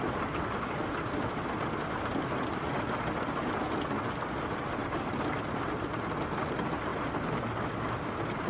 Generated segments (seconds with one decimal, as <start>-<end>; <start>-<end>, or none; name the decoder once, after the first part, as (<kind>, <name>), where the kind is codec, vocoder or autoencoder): none